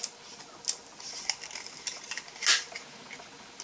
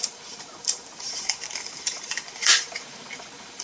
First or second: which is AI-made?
second